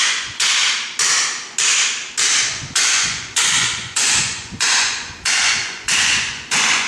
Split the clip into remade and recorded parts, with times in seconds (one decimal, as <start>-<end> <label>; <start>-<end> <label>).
0.0-0.6 remade; 0.6-2.4 recorded; 2.4-6.9 remade